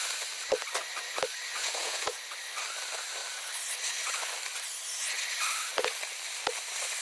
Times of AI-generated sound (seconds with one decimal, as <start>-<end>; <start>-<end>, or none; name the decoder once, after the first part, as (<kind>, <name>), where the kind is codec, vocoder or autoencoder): 1.5-2.2 (vocoder, Vocos)